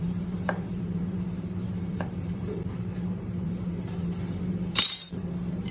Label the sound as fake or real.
fake